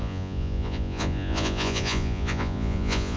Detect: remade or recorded remade